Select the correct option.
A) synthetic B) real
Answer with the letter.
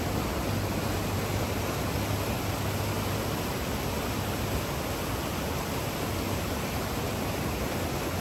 B